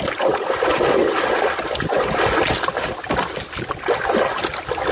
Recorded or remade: recorded